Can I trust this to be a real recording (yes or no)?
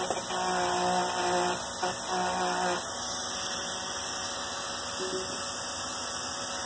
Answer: yes